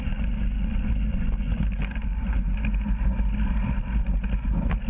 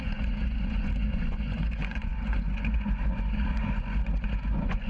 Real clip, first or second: first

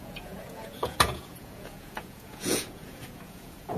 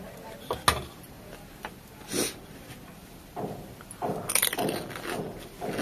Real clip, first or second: second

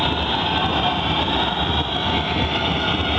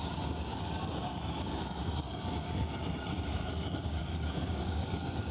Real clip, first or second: first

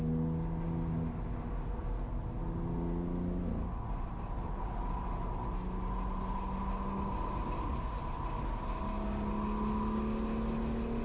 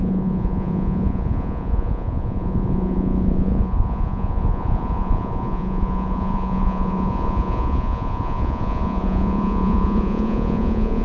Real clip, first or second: first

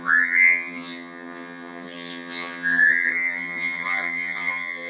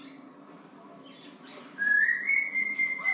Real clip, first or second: second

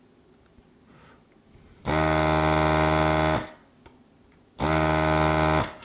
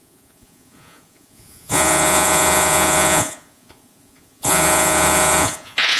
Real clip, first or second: first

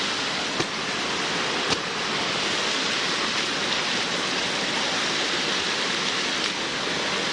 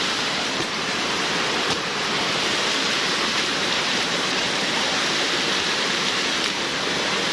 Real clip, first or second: first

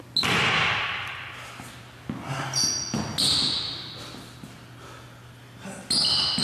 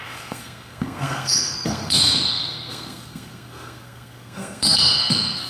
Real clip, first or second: first